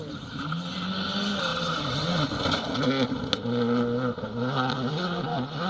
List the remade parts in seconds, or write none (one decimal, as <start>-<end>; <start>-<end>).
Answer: none